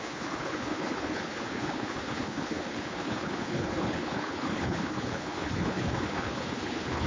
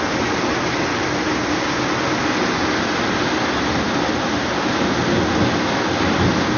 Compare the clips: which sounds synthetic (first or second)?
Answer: first